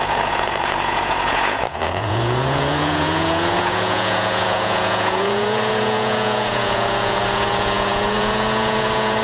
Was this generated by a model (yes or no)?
yes